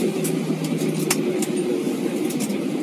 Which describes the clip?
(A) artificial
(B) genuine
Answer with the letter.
B